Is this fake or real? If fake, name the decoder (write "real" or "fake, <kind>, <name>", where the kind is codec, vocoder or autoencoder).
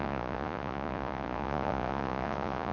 fake, vocoder, Vocos